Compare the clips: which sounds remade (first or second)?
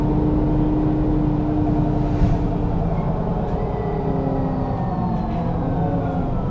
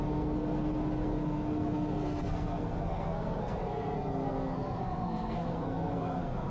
second